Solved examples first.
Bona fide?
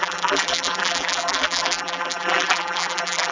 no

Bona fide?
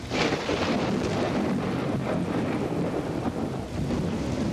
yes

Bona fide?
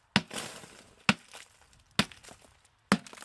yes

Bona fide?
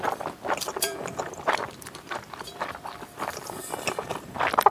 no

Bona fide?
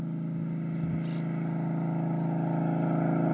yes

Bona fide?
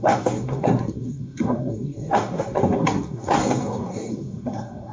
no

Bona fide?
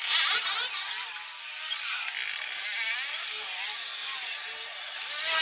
yes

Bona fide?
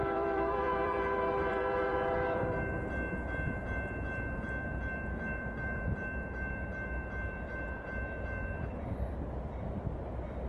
no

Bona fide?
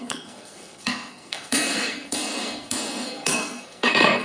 no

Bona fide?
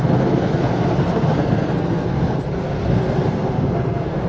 no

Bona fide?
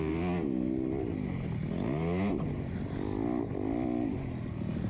yes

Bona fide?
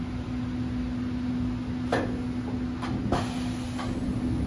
yes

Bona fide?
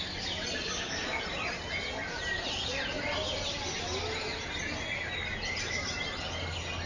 yes